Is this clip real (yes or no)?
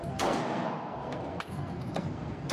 no